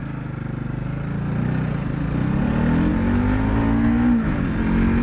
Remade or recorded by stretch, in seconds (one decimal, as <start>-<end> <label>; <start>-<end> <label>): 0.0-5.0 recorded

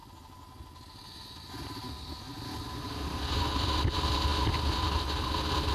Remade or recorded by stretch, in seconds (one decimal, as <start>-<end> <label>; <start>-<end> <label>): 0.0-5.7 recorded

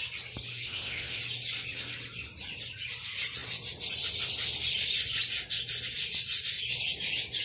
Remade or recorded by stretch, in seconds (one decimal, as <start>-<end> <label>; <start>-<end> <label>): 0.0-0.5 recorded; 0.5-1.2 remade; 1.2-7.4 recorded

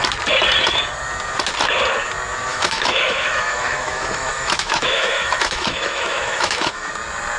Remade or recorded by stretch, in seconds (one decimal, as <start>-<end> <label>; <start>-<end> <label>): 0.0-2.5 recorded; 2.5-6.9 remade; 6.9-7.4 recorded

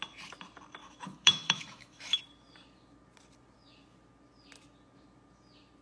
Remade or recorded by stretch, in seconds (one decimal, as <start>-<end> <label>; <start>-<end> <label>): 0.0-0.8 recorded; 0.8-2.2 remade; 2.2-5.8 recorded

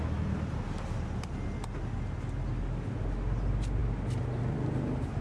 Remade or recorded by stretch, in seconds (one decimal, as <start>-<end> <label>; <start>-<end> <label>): 0.0-5.2 recorded

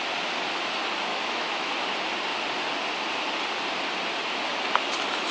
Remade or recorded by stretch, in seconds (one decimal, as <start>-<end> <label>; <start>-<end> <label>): 0.0-1.1 recorded; 1.1-1.7 remade; 1.7-5.3 recorded

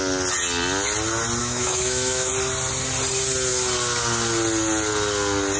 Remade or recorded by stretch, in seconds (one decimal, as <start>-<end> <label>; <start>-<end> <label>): 0.0-1.4 recorded; 1.4-2.3 remade; 2.3-5.6 recorded